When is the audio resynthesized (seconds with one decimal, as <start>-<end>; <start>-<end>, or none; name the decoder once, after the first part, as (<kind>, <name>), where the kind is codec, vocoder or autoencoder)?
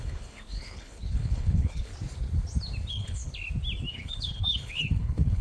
0.0-1.9 (codec, HILCodec); 2.9-3.3; 3.9-5.4